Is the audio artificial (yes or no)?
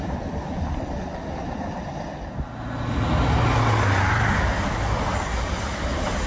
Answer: no